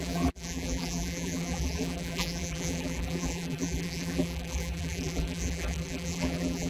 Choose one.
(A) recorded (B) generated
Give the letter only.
B